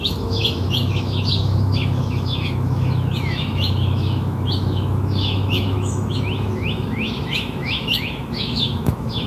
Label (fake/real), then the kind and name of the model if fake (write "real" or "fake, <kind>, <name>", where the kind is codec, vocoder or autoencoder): fake, autoencoder, DAC-VAE